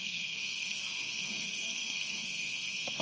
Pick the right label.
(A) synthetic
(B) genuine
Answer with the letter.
A